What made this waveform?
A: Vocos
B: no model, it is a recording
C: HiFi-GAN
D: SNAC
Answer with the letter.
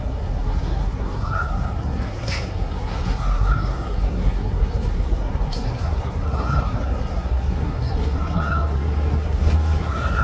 D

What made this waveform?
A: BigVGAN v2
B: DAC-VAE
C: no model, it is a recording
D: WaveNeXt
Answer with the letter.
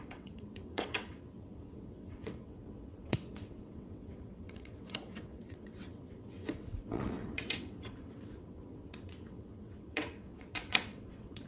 D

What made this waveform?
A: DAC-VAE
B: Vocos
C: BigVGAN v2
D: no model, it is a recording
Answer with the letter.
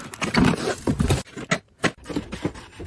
D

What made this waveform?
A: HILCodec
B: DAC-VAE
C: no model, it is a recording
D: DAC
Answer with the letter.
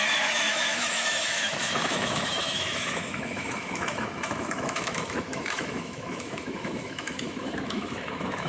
B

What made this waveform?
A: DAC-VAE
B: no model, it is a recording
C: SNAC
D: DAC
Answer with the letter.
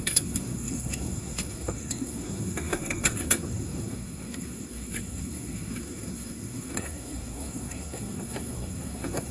C